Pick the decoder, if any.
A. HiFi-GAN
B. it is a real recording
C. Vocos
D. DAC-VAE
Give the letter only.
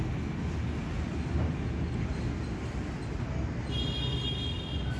B